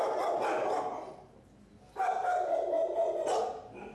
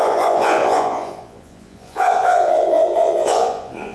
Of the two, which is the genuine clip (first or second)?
first